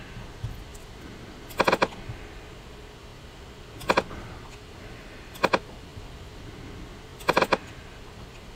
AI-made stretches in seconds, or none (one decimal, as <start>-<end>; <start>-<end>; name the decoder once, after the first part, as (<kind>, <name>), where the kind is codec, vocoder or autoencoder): 5.9-6.5 (vocoder, BigVGAN v2); 7.1-7.8